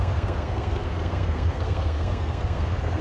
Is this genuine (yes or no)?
no